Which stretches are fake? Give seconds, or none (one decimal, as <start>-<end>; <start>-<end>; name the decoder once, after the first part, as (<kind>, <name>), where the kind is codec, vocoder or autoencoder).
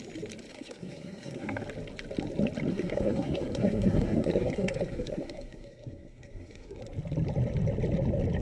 0.5-1.6 (codec, SNAC); 2.7-6.8